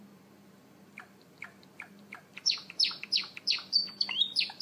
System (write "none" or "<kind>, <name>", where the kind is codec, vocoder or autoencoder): vocoder, BigVGAN v2